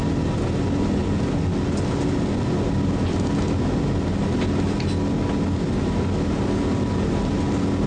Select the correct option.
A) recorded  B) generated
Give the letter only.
A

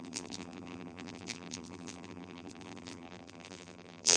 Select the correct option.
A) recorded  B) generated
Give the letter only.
B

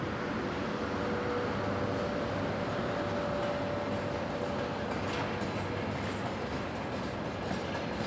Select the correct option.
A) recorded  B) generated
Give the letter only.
A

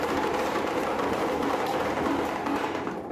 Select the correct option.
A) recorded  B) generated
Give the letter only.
A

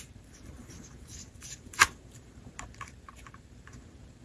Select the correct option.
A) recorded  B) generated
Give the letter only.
B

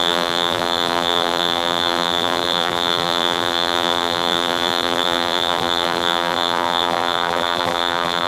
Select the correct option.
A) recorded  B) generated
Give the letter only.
B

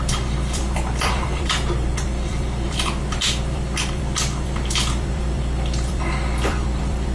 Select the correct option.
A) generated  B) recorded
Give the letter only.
A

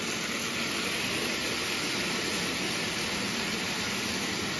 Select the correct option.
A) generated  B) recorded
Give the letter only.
B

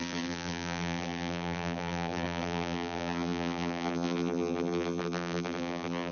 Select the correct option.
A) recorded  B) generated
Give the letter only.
B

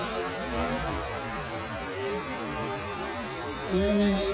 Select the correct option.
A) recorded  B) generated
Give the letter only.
B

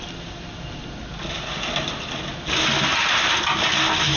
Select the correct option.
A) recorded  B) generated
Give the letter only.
A